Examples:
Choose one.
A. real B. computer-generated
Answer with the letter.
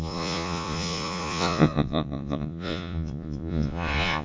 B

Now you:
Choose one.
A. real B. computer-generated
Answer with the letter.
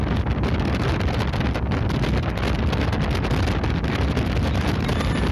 A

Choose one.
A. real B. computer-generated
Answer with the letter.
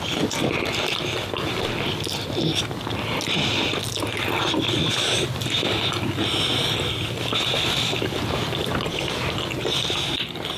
A